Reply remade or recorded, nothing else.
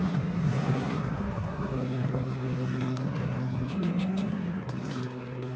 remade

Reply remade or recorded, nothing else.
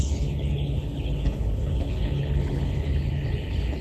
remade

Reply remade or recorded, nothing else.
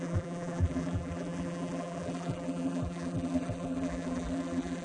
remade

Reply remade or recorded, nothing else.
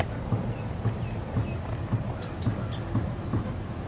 recorded